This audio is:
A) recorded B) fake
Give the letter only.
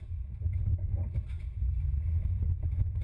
A